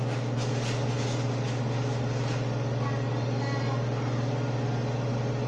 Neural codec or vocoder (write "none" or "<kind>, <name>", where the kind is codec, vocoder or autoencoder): none